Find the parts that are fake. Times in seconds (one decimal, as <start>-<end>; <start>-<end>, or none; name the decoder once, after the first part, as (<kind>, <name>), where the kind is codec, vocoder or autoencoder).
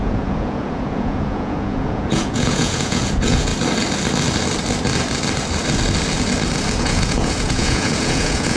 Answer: 0.0-3.5 (vocoder, Vocos); 6.8-8.6